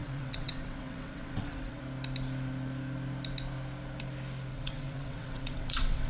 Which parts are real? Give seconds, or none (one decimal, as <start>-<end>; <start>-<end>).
1.8-4.5